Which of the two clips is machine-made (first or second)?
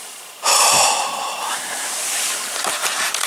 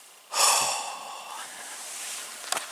first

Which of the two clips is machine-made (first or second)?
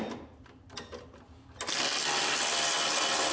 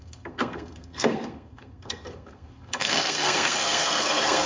second